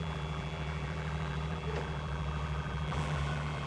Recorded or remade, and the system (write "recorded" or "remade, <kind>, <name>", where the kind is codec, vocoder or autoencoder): remade, vocoder, BigVGAN v2